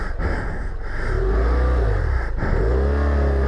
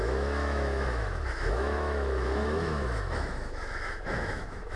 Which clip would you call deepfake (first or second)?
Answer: second